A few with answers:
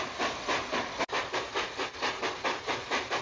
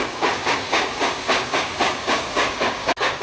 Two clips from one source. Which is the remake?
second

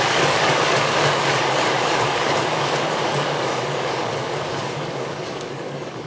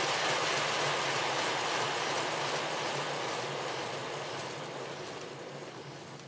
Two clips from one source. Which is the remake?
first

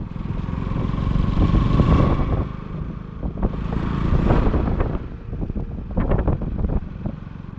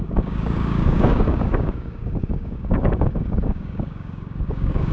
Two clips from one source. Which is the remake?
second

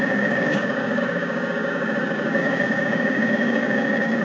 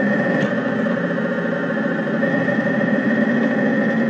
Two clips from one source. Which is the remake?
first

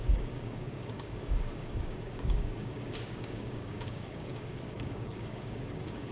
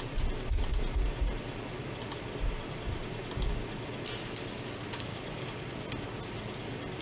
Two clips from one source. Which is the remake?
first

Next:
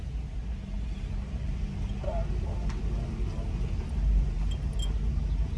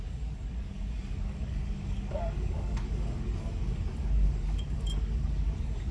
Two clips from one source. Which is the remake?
second